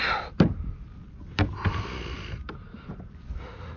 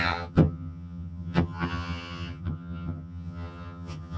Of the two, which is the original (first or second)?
first